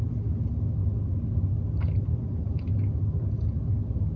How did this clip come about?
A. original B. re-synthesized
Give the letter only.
A